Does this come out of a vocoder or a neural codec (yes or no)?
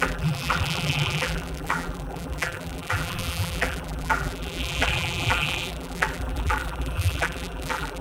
yes